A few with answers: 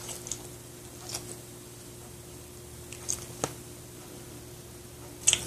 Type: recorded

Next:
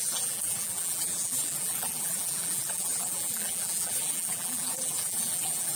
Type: remade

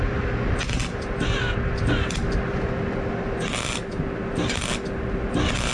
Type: recorded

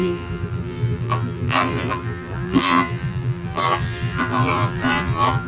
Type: remade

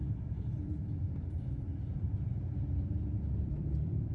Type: remade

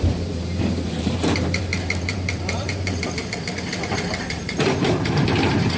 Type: remade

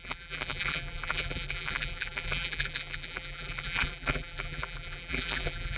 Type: remade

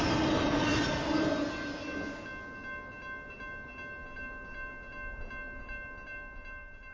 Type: recorded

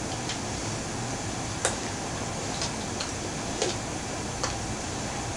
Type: recorded